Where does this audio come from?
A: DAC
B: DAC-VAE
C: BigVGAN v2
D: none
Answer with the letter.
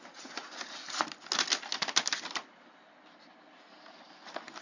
D